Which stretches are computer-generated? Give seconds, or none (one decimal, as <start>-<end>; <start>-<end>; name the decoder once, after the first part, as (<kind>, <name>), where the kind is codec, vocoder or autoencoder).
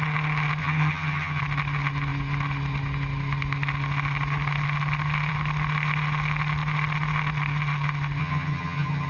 0.6-1.4 (vocoder, HiFi-GAN); 8.2-9.1